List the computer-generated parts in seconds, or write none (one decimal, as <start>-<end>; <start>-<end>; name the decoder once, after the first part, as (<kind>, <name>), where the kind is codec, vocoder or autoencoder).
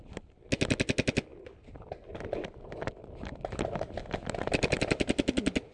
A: none